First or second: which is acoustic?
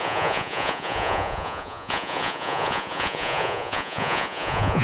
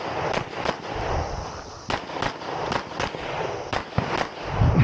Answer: second